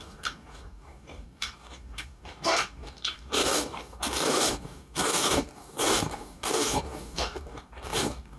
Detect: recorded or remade remade